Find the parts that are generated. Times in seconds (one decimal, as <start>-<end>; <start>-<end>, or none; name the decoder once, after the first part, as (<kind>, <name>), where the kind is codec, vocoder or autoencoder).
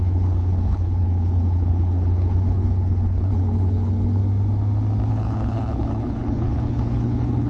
0.0-4.2 (codec, HILCodec); 5.1-7.5